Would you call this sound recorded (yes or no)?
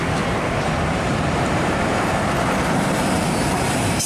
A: no